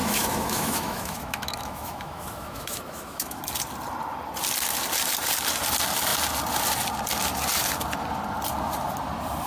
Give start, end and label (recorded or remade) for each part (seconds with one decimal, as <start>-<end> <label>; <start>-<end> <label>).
0.0-3.4 remade; 3.4-9.5 recorded